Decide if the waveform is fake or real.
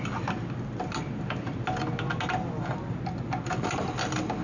real